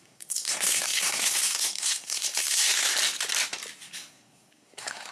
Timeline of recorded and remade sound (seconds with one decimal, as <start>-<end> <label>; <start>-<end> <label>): 0.0-2.9 remade; 2.9-3.8 recorded; 3.8-5.1 remade